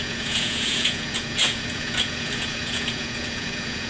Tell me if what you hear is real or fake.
fake